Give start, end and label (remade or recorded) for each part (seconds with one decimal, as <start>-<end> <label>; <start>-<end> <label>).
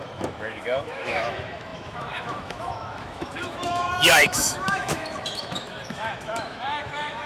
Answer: 0.0-7.3 remade